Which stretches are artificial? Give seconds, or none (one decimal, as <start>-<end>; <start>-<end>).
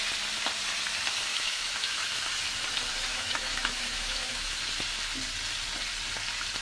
1.3-2.3; 3.1-4.6